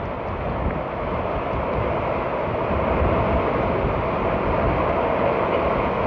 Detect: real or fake real